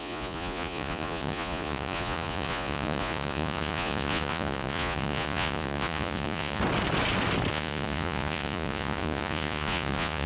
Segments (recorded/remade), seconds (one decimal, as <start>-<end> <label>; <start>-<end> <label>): 0.0-6.6 remade; 6.6-7.5 recorded; 7.5-10.3 remade